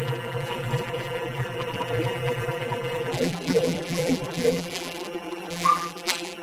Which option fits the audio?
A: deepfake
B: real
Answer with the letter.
A